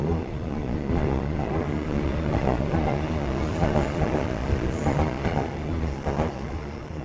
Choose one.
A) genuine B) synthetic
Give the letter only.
B